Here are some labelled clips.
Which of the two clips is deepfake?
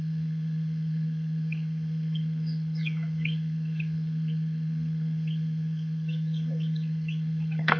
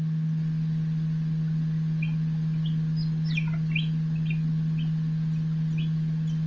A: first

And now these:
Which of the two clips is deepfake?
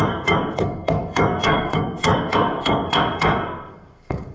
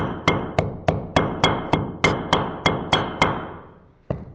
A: first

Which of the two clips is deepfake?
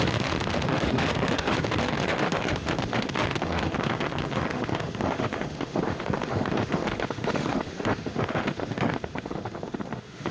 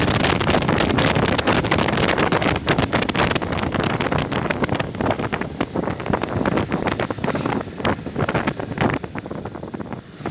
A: first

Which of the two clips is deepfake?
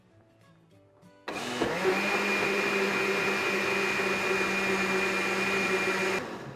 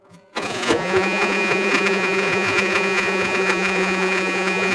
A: second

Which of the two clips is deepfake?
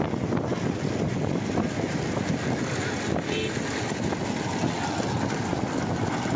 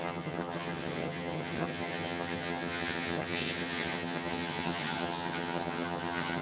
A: second